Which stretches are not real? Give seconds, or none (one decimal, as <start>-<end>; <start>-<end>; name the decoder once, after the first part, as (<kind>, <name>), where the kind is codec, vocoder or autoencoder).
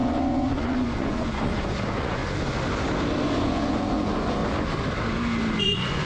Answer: 0.0-2.2 (vocoder, Vocos); 3.4-4.4; 5.6-6.1